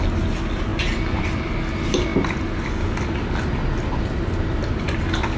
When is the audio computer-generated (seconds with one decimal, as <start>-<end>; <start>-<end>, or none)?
none